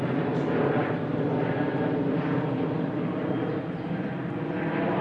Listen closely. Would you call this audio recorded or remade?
recorded